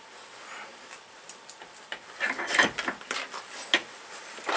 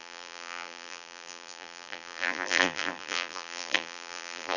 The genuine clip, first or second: first